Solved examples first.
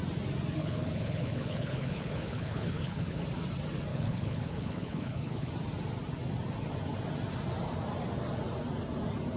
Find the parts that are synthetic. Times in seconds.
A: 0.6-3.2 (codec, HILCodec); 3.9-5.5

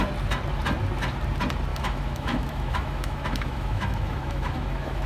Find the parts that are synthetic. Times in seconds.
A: 1.7-5.1 (autoencoder, DAC-VAE)

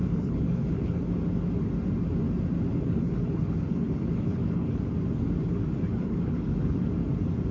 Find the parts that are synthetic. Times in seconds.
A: 0.0-1.1 (codec, HILCodec); 2.7-4.8; 5.9-6.9

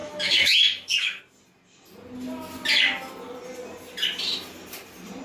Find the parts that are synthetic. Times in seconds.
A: 0.0-1.2 (autoencoder, DAC-VAE)

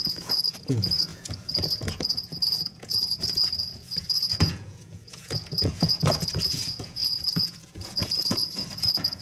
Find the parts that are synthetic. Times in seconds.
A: 0.0-9.2 (vocoder, Vocos)

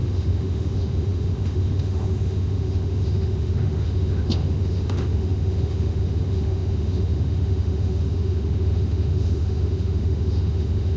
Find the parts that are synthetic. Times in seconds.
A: 0.0-11.0 (autoencoder, DAC-VAE)